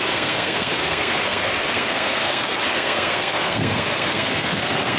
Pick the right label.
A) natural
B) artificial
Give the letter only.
B